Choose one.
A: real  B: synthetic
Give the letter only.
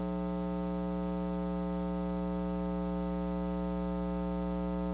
A